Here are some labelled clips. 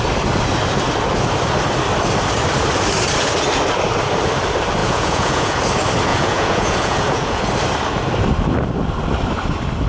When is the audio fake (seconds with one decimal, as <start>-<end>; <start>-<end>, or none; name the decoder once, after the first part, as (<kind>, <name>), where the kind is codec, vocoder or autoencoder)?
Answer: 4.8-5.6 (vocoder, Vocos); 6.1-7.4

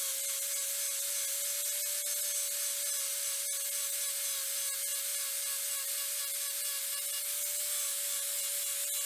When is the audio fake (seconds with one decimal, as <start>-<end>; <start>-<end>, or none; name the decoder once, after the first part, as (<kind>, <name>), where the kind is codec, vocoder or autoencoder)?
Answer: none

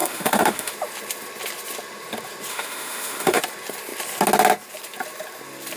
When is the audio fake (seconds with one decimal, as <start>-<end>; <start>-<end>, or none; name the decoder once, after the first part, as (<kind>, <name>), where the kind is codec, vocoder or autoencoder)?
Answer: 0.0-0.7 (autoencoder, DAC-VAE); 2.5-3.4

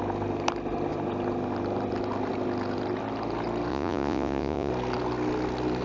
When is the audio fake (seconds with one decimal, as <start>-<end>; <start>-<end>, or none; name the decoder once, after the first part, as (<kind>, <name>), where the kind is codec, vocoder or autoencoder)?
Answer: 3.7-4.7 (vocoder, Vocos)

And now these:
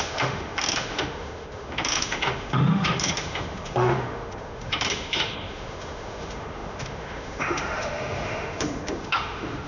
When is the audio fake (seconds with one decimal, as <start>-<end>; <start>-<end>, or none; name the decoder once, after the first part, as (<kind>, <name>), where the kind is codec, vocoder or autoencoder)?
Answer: 0.0-9.7 (autoencoder, DAC-VAE)

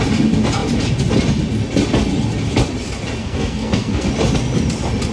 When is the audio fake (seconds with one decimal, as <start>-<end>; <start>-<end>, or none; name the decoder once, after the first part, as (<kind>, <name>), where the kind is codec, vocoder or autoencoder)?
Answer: 3.2-4.1 (codec, SNAC)

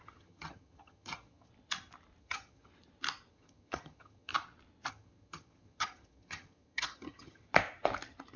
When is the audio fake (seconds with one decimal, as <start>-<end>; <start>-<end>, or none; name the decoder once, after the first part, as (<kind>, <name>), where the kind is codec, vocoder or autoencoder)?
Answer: 0.0-1.5 (vocoder, HiFi-GAN); 2.2-2.7; 3.3-4.3; 4.9-7.5

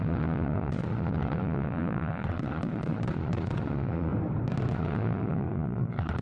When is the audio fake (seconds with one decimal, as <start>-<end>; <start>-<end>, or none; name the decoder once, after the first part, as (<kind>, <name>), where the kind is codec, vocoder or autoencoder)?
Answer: 0.0-4.1 (vocoder, Vocos); 4.7-6.2